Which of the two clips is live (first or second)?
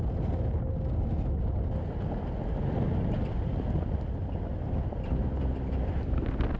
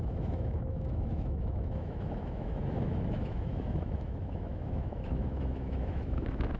first